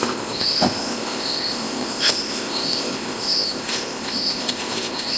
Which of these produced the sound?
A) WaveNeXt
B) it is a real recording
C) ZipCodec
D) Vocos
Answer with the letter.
C